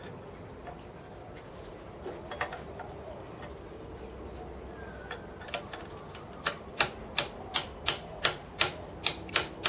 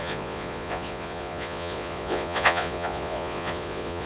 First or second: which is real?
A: first